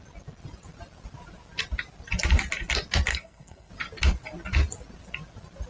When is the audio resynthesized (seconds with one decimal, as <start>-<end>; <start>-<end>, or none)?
3.1-3.7